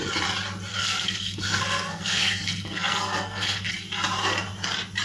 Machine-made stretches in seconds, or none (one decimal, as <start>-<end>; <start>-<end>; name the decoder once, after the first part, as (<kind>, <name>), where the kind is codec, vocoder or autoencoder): 0.7-3.7 (codec, SNAC)